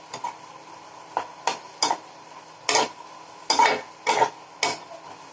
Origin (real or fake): real